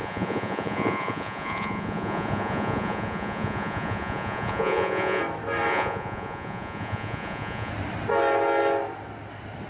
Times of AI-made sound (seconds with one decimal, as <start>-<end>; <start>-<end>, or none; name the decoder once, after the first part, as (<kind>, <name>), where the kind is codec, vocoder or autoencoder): 0.0-5.2 (vocoder, Vocos); 5.7-7.7